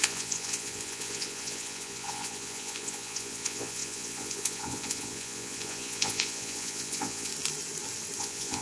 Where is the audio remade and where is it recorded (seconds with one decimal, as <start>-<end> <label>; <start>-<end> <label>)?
0.0-7.3 remade; 7.3-8.2 recorded; 8.2-8.6 remade